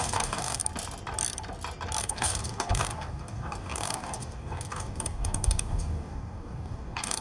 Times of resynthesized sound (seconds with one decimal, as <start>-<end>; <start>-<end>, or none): 0.0-0.6; 2.0-7.2